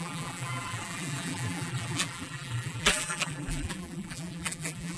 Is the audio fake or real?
fake